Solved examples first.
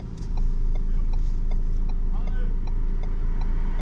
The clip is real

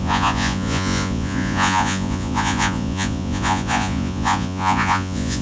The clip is fake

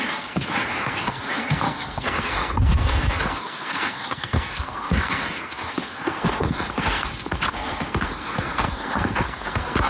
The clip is fake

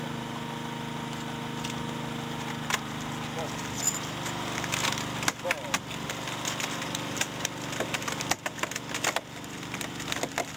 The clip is real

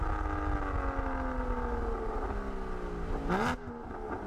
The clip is real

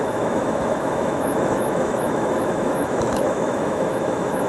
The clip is fake